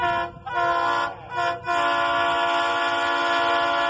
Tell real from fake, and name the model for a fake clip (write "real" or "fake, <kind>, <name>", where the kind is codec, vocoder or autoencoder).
real